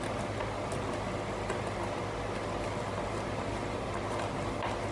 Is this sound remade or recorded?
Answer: recorded